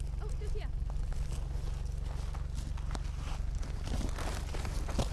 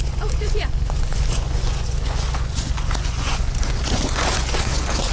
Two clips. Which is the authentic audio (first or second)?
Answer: first